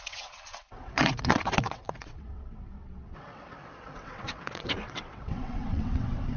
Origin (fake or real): fake